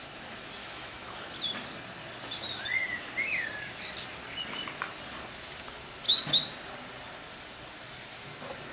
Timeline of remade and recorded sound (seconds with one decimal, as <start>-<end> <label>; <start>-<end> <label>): 0.0-0.6 recorded; 0.6-1.3 remade; 1.3-8.7 recorded